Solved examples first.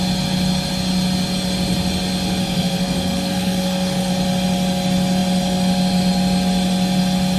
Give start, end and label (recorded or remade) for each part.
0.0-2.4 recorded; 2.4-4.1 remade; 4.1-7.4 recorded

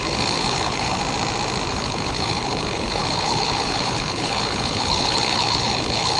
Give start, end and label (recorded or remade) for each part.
0.0-1.0 remade; 1.0-1.7 recorded; 1.7-6.2 remade

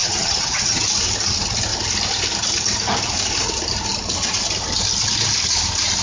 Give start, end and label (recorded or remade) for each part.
0.0-0.8 remade; 0.8-6.0 recorded

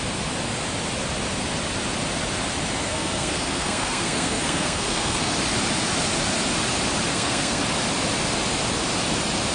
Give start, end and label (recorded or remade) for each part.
0.0-2.8 recorded; 2.8-5.3 remade; 5.3-7.1 recorded; 7.1-7.6 remade; 7.6-9.5 recorded

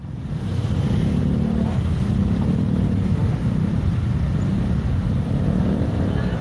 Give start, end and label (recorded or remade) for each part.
0.0-6.4 recorded

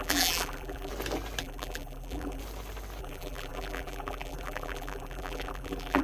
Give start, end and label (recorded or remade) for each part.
0.0-0.9 remade; 0.9-1.4 recorded; 1.4-2.4 remade; 2.4-3.0 recorded; 3.0-6.0 remade

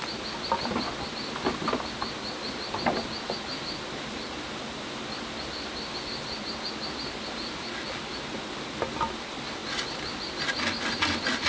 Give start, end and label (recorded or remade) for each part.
0.0-11.5 recorded